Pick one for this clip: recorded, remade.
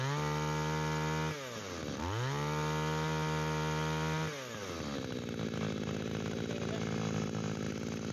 recorded